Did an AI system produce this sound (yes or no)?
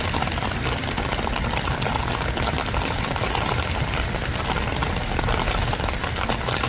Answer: no